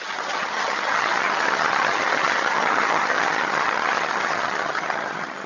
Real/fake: fake